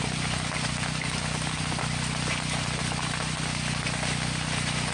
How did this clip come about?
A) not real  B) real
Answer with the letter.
B